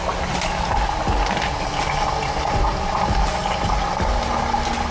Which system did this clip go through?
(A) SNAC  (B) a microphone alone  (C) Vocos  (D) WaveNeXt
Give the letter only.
B